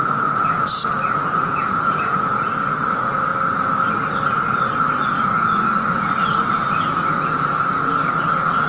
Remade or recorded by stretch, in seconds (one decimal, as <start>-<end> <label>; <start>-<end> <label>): 0.0-3.3 remade; 3.3-3.9 recorded; 3.9-8.7 remade